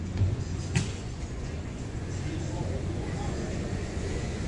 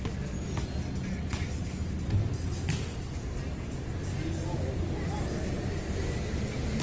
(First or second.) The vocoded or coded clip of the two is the first